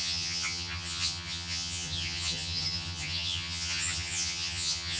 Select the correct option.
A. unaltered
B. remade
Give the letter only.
B